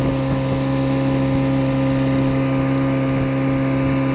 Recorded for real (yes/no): yes